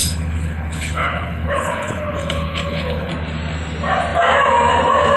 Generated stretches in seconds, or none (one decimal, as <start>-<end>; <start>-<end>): 0.0-3.1